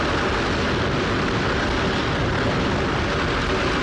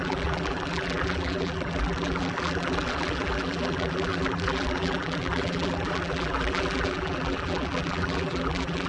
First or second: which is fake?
second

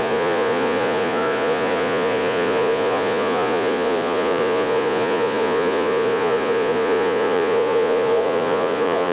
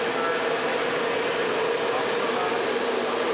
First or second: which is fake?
first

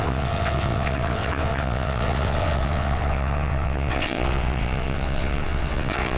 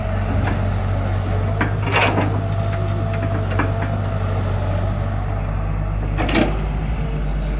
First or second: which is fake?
first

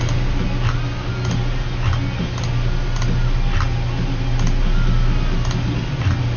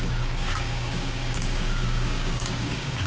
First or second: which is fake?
second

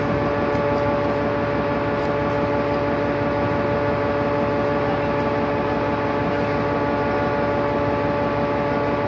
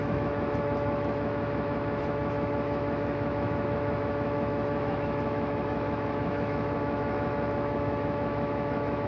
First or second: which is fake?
second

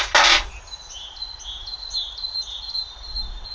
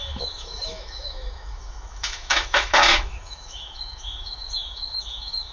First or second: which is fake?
second